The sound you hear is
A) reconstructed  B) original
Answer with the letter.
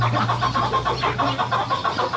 B